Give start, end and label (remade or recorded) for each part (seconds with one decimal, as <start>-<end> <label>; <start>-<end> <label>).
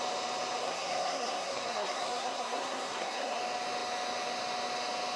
0.0-0.6 recorded; 0.6-3.4 remade; 3.4-5.2 recorded